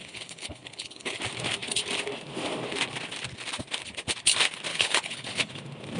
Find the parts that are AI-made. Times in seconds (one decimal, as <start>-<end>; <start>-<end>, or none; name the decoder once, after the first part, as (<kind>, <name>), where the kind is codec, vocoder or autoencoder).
0.0-1.2 (codec, HILCodec); 4.7-5.5